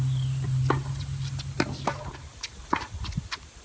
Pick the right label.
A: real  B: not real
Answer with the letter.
A